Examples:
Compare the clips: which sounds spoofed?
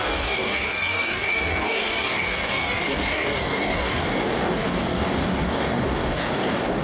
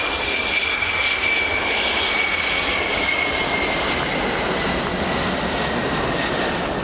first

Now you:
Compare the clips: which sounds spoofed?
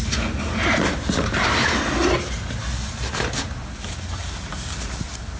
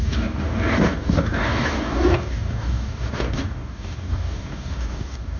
second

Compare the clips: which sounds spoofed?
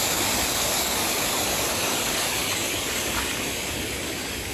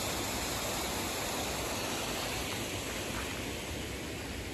first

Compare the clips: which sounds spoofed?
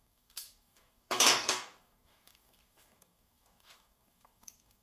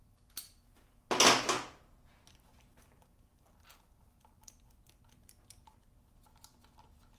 first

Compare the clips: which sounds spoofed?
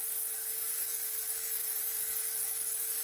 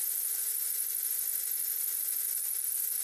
first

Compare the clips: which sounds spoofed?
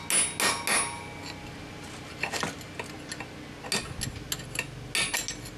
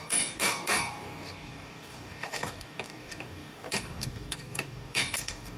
second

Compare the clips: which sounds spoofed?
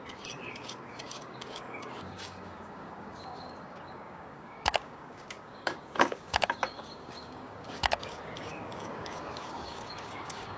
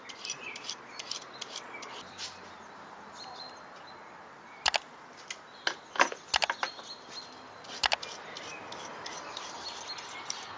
first